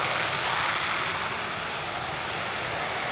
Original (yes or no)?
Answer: yes